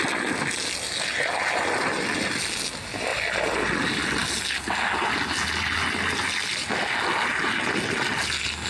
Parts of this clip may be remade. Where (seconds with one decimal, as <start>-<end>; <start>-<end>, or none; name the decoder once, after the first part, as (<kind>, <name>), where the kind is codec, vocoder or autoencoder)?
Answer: none